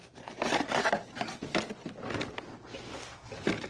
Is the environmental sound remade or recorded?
recorded